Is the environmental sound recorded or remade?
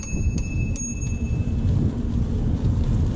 recorded